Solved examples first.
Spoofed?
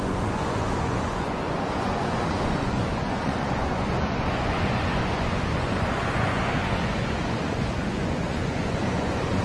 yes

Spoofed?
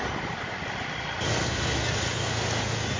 no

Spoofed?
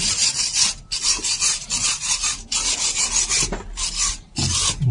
no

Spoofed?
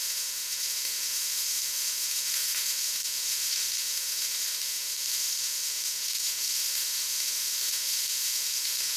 yes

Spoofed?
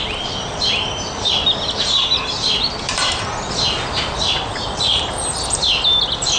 no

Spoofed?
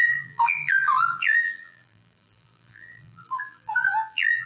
yes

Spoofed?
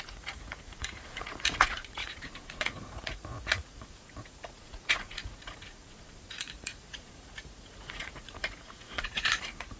yes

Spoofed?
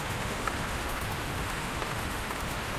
yes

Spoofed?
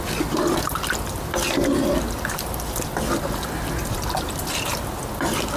no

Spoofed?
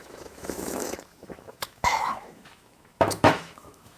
yes